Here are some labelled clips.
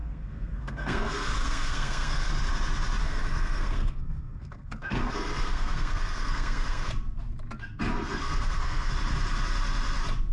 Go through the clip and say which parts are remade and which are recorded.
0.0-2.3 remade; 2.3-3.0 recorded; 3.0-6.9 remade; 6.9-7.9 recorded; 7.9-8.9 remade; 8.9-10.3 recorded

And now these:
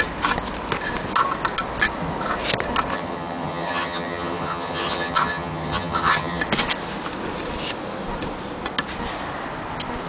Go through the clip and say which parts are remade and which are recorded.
0.0-2.9 recorded; 2.9-6.4 remade; 6.4-10.1 recorded

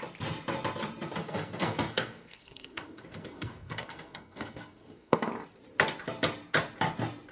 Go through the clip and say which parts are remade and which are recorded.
0.0-1.2 recorded; 1.2-5.3 remade; 5.3-7.3 recorded

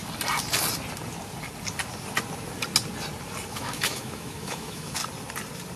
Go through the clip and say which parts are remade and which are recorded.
0.0-3.5 recorded; 3.5-5.0 remade; 5.0-5.8 recorded

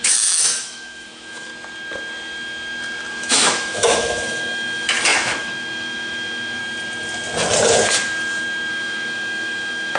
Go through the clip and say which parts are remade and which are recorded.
0.0-1.5 remade; 1.5-3.1 recorded; 3.1-6.6 remade; 6.6-8.7 recorded; 8.7-10.0 remade

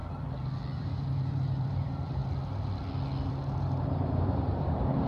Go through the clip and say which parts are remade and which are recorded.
0.0-0.8 recorded; 0.8-2.2 remade; 2.2-3.3 recorded; 3.3-5.1 remade

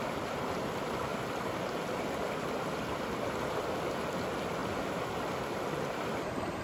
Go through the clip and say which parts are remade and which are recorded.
0.0-6.6 recorded